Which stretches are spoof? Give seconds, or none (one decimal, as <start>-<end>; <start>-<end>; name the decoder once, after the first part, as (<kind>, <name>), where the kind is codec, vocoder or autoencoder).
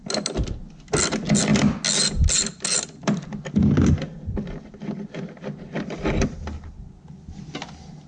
none